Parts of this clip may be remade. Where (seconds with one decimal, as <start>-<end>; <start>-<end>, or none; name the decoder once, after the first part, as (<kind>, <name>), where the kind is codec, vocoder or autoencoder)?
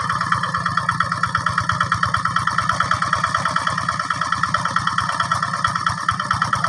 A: 5.3-6.7 (vocoder, BigVGAN v2)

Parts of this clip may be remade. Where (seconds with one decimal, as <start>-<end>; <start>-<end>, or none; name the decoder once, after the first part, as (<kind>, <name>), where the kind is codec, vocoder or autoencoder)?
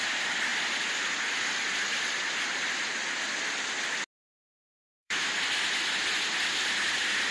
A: 4.7-5.3 (autoencoder, DAC-VAE)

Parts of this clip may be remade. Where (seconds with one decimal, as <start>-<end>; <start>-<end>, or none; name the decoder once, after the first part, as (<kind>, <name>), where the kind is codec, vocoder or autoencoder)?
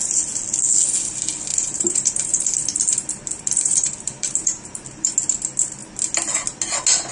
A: 1.5-5.1 (vocoder, BigVGAN v2)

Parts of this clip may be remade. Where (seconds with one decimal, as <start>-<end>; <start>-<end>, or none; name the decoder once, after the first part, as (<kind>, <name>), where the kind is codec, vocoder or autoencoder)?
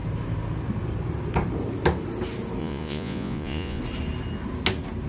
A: 2.6-3.8 (vocoder, Vocos)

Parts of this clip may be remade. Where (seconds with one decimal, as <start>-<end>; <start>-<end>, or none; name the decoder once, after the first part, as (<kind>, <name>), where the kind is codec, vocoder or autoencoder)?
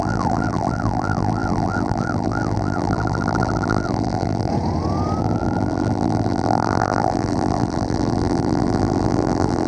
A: 0.0-4.5 (vocoder, BigVGAN v2); 5.2-9.7